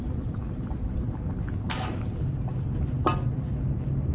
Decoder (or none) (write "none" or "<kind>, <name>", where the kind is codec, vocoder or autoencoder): none